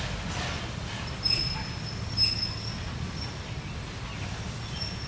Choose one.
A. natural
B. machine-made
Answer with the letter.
A